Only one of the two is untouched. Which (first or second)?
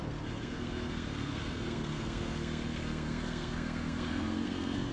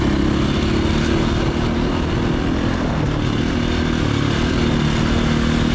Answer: second